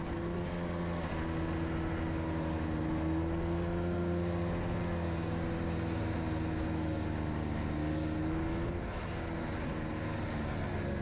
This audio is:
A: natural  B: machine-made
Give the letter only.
A